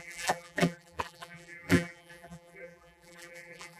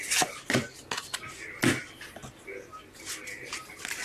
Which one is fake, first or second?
first